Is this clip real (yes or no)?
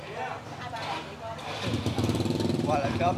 no